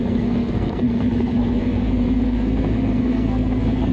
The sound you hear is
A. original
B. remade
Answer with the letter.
B